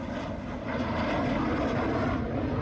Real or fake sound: real